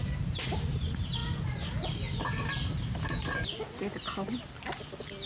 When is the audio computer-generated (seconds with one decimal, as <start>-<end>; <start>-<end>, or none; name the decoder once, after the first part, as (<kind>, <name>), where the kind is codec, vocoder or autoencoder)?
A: none

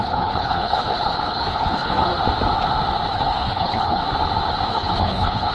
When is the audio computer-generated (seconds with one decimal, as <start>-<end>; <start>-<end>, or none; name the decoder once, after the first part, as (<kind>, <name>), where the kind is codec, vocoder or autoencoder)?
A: 0.0-2.1 (codec, HILCodec); 3.1-4.0; 4.7-5.5

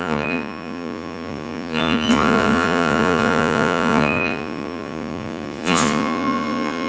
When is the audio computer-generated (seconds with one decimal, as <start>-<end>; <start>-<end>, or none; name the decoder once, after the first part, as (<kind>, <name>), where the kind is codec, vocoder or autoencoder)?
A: 0.0-6.9 (vocoder, Vocos)

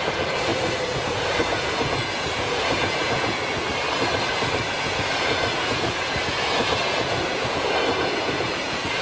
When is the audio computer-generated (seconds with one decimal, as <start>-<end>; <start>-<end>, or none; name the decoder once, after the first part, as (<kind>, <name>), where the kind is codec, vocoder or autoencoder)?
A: 0.0-0.5 (vocoder, Vocos); 1.0-3.7; 4.8-9.0

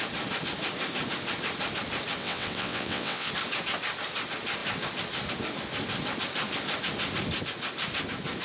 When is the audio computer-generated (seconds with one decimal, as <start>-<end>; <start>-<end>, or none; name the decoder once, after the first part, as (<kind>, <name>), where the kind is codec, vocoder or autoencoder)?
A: 2.2-3.3 (vocoder, WaveNeXt)

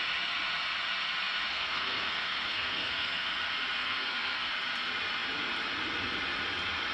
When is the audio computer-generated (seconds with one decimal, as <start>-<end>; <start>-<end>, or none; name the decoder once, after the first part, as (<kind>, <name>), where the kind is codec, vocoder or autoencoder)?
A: 1.5-3.3 (codec, SNAC); 3.8-4.5

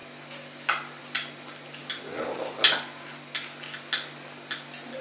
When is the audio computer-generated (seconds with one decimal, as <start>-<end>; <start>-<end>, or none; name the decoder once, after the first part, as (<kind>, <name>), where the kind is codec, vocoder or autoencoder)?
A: none

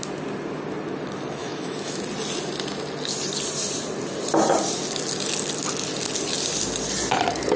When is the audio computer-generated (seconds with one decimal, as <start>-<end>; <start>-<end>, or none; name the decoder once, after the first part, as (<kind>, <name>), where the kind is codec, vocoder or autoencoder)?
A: 1.4-2.0 (autoencoder, DAC-VAE)